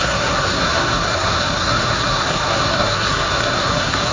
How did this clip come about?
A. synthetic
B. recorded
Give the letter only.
A